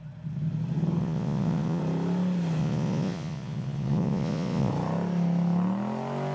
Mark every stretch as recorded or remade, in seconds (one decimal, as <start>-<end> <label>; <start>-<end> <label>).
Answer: 0.0-1.0 recorded; 1.0-1.8 remade; 1.8-2.6 recorded; 2.6-4.7 remade; 4.7-6.3 recorded